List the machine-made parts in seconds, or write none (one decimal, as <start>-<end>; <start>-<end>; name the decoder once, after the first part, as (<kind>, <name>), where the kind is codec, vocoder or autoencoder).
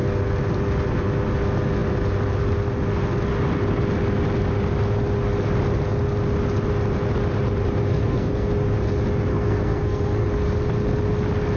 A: 7.9-8.5 (codec, SNAC); 9.3-10.2